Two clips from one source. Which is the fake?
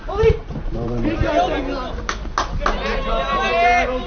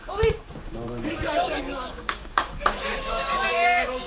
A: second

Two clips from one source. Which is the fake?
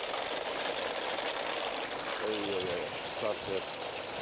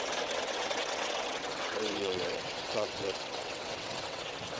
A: second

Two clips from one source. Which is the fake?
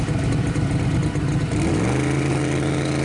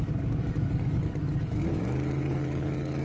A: second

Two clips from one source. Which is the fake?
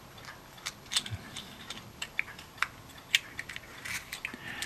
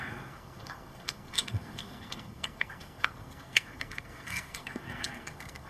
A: second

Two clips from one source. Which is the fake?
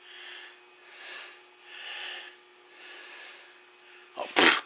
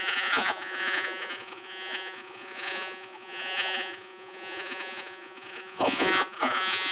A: second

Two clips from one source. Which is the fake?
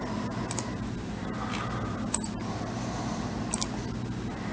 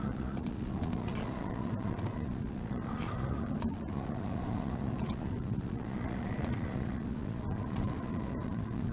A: second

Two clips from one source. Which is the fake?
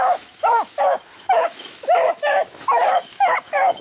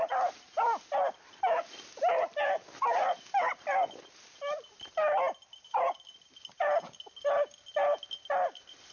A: first